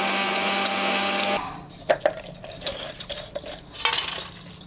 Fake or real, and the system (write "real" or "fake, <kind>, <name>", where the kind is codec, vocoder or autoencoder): real